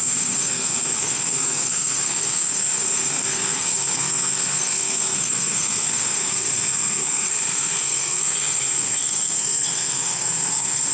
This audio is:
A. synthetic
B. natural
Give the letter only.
A